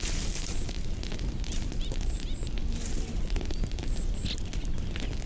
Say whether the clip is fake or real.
real